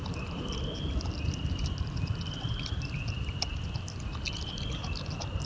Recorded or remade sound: recorded